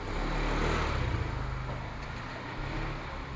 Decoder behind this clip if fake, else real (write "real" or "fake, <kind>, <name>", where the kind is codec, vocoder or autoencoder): real